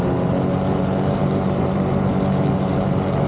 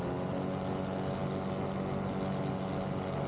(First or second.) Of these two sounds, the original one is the second